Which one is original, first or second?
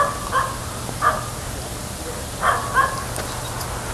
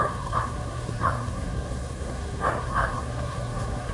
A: first